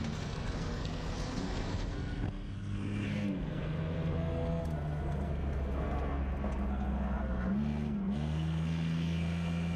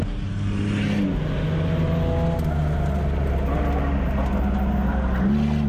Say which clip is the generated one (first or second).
first